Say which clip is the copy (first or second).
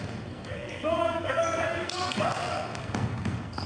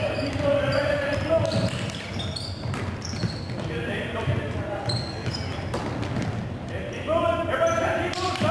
first